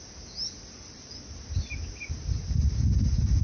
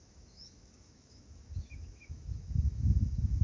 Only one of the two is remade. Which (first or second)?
second